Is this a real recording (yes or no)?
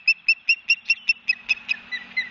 yes